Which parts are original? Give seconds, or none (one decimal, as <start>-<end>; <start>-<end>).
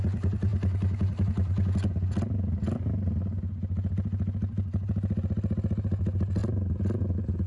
0.0-7.5